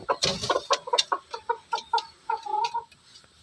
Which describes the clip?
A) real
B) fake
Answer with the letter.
A